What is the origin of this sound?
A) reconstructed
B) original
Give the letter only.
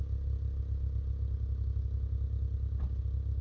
B